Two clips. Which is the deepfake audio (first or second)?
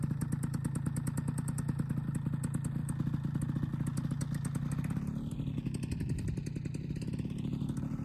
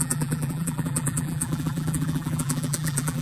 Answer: second